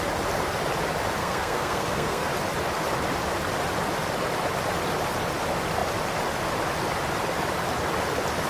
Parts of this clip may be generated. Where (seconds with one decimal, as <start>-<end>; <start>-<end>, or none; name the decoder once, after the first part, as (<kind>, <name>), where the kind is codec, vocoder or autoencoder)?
1.2-2.3 (codec, SNAC)